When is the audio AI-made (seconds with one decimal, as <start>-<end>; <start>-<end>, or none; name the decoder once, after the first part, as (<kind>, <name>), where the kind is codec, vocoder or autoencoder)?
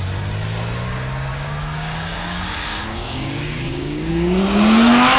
1.3-4.4 (codec, DAC)